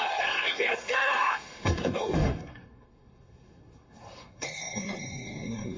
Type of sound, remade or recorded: remade